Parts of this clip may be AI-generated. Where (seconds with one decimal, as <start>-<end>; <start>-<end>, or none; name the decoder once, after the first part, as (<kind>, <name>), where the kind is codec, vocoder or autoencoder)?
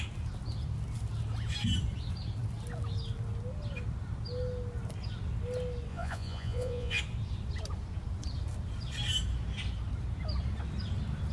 5.9-7.0 (vocoder, Vocos)